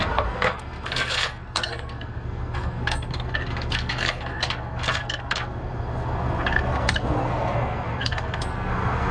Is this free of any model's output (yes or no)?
no